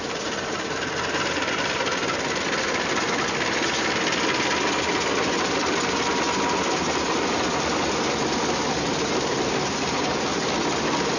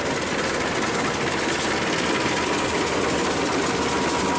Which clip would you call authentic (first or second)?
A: second